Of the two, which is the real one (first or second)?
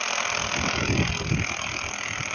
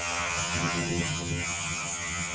first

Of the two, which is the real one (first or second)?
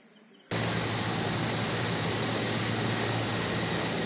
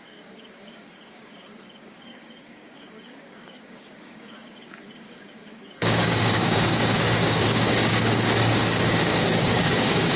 first